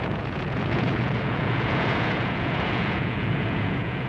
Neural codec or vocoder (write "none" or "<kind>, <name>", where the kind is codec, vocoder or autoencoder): vocoder, Vocos